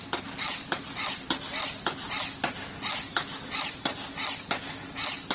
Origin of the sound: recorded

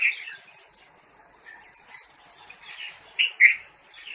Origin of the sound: recorded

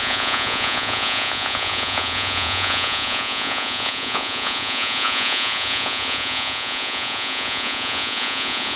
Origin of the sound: remade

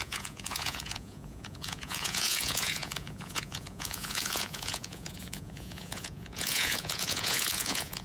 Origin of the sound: remade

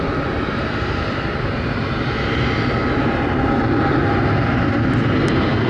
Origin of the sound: recorded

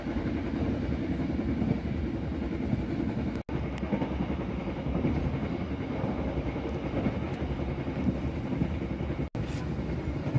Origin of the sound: recorded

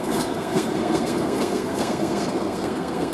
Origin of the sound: remade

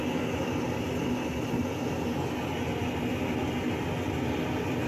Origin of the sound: recorded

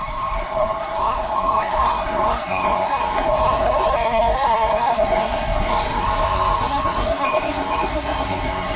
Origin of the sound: remade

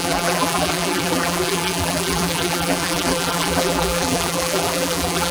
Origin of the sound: remade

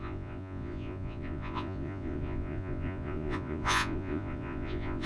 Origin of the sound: remade